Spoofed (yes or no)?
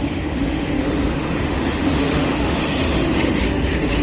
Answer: yes